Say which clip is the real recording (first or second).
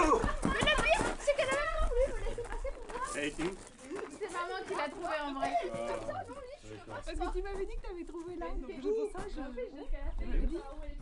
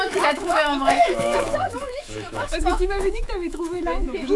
first